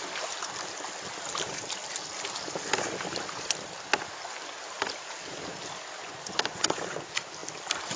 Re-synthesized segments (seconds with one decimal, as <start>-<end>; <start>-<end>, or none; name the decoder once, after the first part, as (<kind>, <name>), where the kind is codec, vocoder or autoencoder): 6.0-7.0 (vocoder, Vocos)